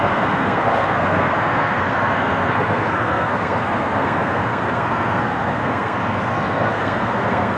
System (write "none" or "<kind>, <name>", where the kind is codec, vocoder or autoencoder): codec, SNAC